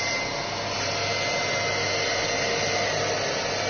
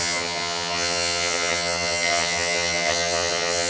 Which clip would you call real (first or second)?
first